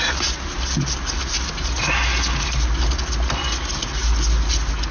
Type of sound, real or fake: real